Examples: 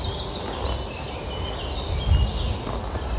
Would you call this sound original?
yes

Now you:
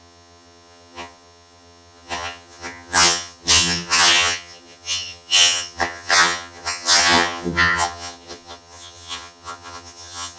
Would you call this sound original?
no